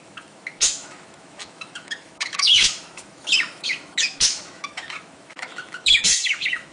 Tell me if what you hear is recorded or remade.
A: remade